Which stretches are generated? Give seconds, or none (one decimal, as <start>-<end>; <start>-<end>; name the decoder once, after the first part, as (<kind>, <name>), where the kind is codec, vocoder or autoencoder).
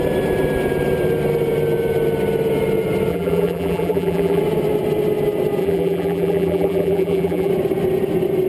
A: 3.1-4.4 (vocoder, BigVGAN v2); 5.6-7.5